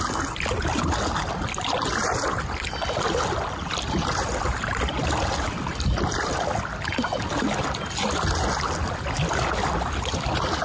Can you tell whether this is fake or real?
real